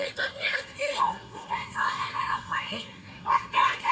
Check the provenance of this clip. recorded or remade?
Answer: remade